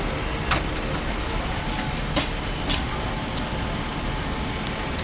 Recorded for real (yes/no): yes